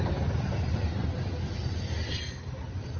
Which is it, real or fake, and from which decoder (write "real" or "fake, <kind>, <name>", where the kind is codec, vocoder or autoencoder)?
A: real